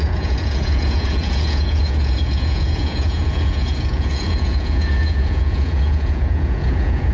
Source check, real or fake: fake